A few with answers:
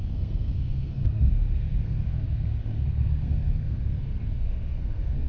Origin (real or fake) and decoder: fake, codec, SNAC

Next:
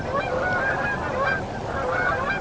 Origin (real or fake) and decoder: real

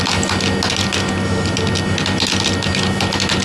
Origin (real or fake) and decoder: real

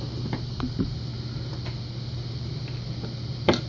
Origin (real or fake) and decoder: real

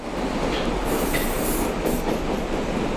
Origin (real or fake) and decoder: real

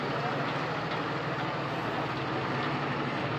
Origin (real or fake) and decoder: real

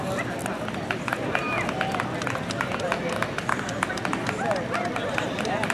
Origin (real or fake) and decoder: real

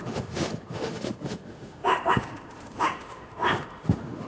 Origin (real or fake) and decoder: fake, autoencoder, DAC-VAE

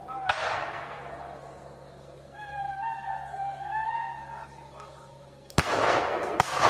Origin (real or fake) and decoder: fake, codec, SNAC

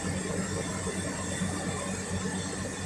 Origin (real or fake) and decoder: real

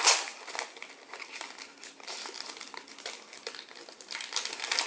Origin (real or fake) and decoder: real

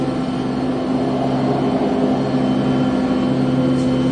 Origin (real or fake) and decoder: real